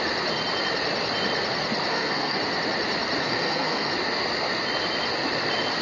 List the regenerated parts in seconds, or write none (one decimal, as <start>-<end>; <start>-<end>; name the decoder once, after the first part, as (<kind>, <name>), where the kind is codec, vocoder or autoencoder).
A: 1.9-2.4 (codec, SNAC); 3.2-3.9